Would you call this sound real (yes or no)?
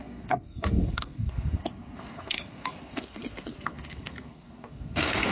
no